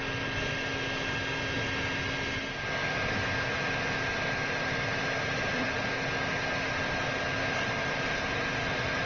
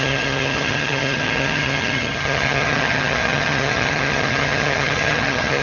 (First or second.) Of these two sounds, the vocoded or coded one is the second